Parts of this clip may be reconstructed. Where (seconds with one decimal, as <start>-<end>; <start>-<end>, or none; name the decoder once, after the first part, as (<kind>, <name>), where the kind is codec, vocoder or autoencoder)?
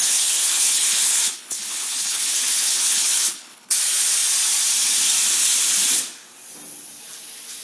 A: 0.0-3.7 (codec, HILCodec)